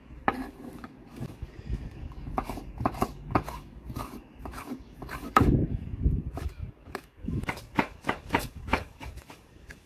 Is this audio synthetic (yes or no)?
yes